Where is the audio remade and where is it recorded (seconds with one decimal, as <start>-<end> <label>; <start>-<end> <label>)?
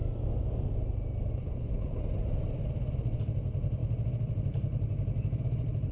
0.0-1.4 recorded; 1.4-2.0 remade; 2.0-5.9 recorded